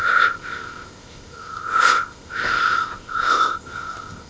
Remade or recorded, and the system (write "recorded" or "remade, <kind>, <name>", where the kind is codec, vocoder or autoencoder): remade, codec, ZipCodec